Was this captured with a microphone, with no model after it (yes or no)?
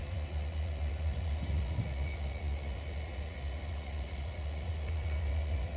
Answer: no